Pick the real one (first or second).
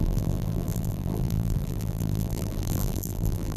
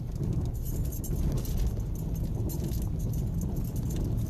second